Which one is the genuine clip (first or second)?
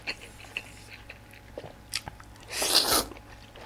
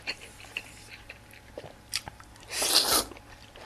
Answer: first